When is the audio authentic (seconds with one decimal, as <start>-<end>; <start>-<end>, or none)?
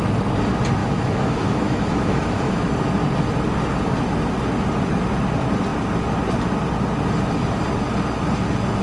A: 0.0-0.8; 2.7-8.8